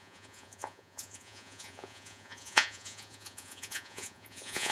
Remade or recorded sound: remade